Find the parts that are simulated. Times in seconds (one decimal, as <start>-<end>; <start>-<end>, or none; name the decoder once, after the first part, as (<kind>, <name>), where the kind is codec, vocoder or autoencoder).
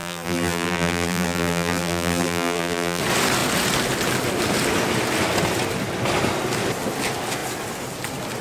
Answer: 0.0-3.0 (vocoder, BigVGAN v2)